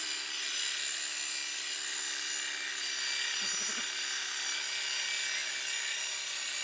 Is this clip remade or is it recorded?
recorded